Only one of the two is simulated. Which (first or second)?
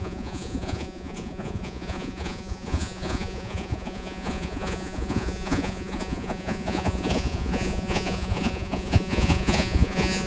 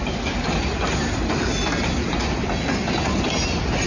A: first